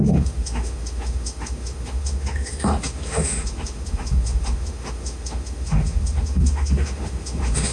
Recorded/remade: remade